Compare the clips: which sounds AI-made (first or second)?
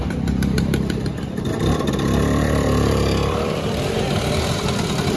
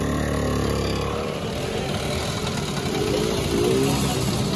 first